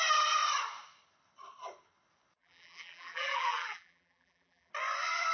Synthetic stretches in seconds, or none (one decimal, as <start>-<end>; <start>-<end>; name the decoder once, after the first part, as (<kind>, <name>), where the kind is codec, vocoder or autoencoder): 2.4-4.7 (vocoder, BigVGAN v2)